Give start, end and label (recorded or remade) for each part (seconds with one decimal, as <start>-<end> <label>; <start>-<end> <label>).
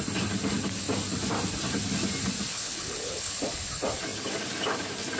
0.0-2.5 recorded; 2.5-3.4 remade; 3.4-5.2 recorded